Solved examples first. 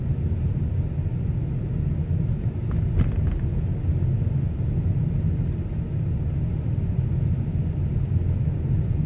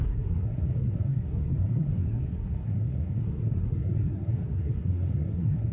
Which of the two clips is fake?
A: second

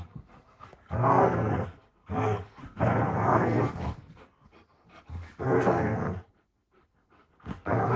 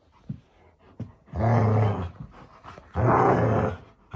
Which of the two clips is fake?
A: first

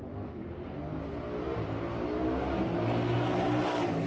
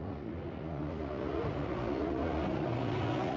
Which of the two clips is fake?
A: second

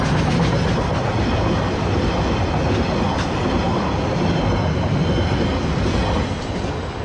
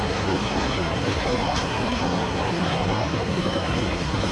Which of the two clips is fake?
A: second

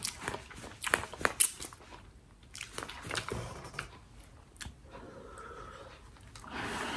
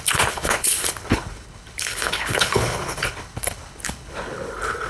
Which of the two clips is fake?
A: second